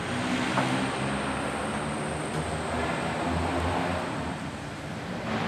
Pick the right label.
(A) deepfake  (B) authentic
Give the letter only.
A